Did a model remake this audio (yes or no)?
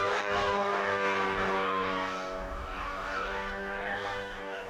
yes